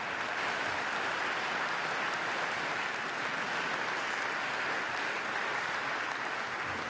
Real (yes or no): yes